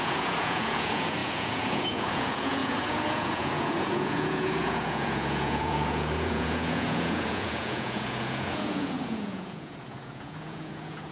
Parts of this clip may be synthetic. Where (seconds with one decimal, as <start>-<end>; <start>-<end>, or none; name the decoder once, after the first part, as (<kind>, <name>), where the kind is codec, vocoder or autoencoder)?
0.0-11.1 (vocoder, Vocos)